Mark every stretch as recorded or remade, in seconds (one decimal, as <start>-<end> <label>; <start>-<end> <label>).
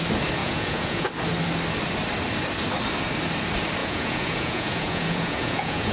0.0-0.4 recorded; 0.4-1.1 remade; 1.1-3.8 recorded; 3.8-5.9 remade